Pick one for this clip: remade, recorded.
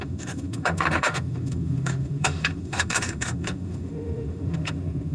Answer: remade